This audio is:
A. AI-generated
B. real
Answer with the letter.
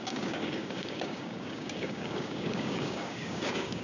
A